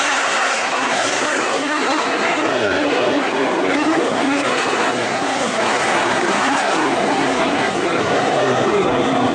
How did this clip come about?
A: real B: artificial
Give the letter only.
B